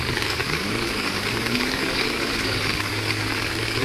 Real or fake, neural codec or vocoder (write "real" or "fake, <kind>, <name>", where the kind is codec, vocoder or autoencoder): fake, codec, DAC